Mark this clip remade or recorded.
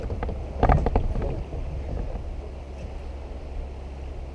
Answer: recorded